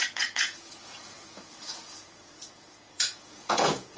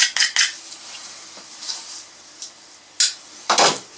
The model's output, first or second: first